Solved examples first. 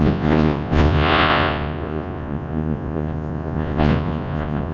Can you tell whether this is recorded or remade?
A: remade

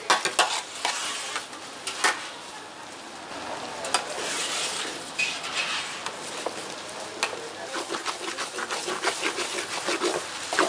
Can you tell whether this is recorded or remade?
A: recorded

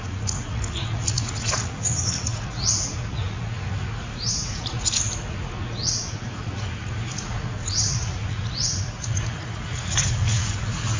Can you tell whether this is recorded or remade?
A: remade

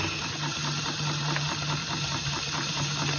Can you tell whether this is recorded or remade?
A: recorded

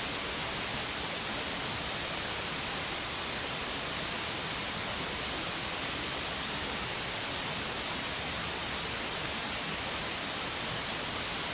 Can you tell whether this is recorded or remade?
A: recorded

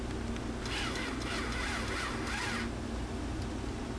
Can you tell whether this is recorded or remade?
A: recorded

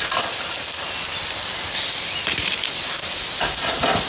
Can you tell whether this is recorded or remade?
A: recorded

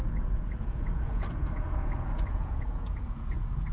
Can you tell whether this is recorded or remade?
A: remade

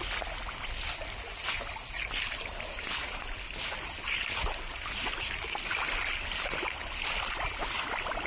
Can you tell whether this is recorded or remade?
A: recorded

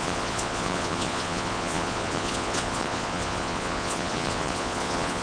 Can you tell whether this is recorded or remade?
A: remade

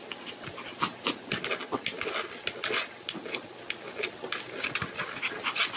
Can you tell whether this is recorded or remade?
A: recorded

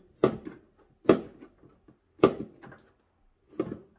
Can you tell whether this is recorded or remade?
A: recorded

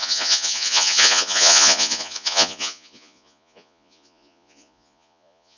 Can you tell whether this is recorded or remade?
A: remade